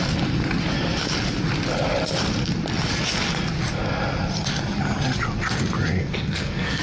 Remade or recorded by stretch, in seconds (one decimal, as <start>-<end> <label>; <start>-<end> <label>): 0.0-6.0 recorded; 6.0-6.8 remade

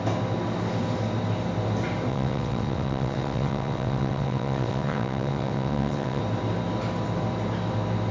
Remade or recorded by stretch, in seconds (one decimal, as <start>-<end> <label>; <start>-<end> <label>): 0.0-2.1 recorded; 2.1-6.2 remade; 6.2-8.1 recorded

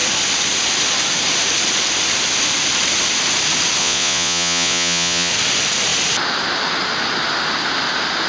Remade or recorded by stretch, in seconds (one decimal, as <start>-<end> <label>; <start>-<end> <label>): 0.0-3.8 recorded; 3.8-5.3 remade; 5.3-8.3 recorded

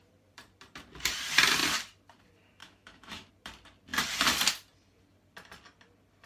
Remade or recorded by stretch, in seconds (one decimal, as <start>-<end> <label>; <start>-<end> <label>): 0.0-2.6 recorded; 2.6-3.3 remade; 3.3-6.3 recorded

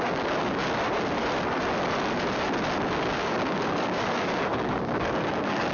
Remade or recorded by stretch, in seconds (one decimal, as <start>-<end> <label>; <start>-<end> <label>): 0.0-0.6 remade; 0.6-2.9 recorded; 2.9-5.7 remade

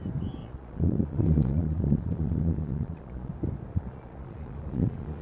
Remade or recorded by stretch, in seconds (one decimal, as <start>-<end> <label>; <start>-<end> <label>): 0.0-0.4 recorded; 0.4-3.3 remade; 3.3-3.7 recorded; 3.7-5.2 remade

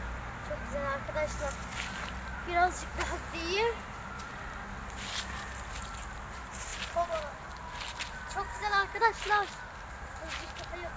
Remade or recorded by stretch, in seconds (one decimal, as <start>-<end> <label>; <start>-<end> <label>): 0.0-6.7 recorded; 6.7-7.2 remade; 7.2-11.0 recorded

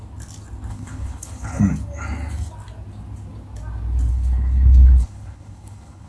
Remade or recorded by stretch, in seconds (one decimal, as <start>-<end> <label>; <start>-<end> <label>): 0.0-0.7 recorded; 0.7-1.6 remade; 1.6-4.1 recorded; 4.1-6.1 remade